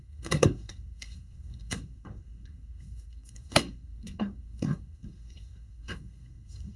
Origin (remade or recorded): remade